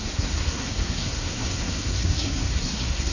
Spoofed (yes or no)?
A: yes